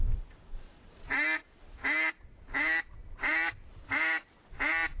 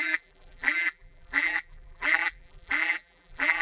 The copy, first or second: second